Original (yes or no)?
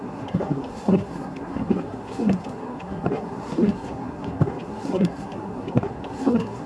no